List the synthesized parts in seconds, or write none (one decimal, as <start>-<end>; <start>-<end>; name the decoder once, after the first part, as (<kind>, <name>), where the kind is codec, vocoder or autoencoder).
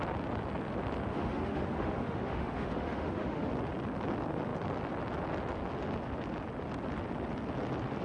1.1-3.5 (autoencoder, DAC-VAE)